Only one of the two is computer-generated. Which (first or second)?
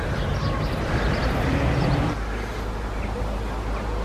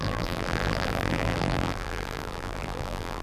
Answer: second